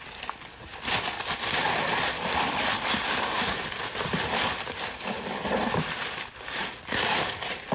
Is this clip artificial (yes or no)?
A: no